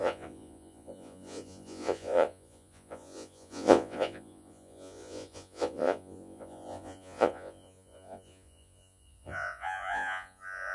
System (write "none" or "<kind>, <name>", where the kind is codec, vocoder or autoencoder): vocoder, Vocos